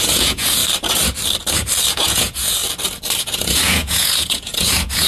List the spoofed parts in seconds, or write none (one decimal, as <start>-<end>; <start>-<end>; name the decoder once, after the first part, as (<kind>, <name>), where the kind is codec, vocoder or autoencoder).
0.0-0.6 (vocoder, Vocos); 1.9-2.6; 3.2-5.1

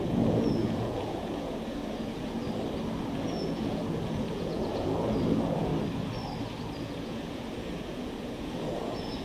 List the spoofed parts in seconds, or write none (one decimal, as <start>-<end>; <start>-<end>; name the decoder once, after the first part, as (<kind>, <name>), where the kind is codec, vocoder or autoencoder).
0.0-2.4 (vocoder, Vocos); 3.0-5.7; 6.8-9.2

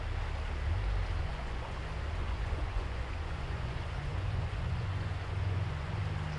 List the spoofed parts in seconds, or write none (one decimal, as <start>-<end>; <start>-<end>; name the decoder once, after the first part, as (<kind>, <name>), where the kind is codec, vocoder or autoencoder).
1.2-1.8 (vocoder, Vocos); 2.2-6.0

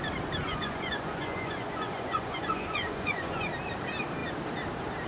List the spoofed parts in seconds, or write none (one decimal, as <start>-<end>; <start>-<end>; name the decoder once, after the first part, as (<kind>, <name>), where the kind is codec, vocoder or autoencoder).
0.4-3.5 (vocoder, Vocos)

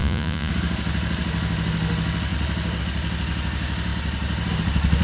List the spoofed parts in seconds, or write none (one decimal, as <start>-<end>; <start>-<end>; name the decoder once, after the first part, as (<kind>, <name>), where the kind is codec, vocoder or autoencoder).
0.0-0.5 (vocoder, Vocos)

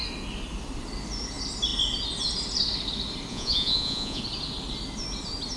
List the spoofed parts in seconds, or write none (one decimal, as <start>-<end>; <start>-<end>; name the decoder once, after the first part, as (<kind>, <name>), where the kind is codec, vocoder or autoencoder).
3.3-4.2 (vocoder, Vocos)

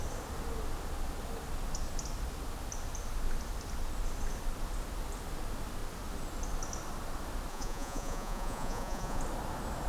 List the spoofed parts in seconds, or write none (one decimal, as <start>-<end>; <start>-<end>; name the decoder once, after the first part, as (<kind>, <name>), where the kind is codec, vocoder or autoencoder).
7.5-9.2 (vocoder, Vocos)

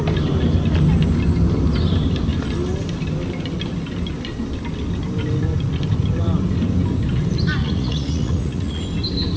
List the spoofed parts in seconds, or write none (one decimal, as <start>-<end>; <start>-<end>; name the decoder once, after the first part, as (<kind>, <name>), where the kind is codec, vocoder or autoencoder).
7.6-8.8 (vocoder, Vocos)